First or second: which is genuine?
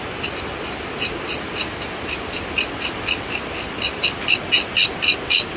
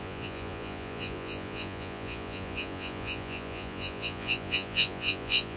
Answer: first